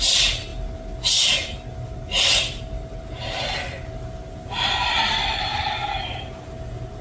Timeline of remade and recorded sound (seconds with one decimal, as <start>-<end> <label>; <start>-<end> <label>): 0.0-7.0 recorded